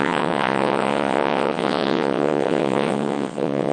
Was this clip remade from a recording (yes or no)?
yes